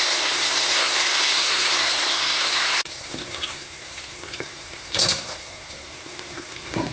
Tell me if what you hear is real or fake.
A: fake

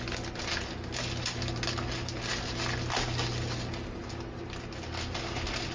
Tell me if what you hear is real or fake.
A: real